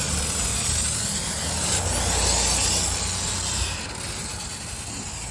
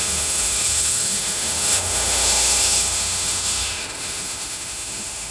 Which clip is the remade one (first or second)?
second